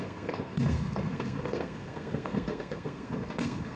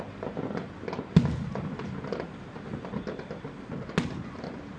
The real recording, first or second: second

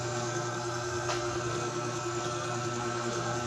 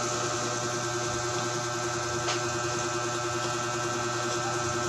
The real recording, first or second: second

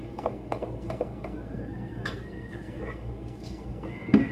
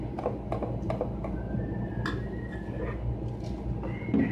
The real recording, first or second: second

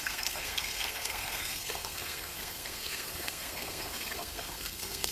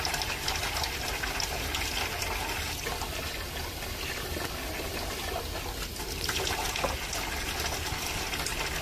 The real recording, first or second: second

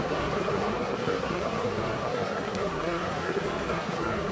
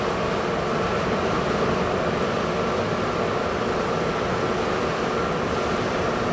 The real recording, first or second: second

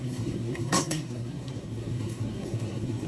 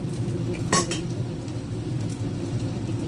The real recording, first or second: second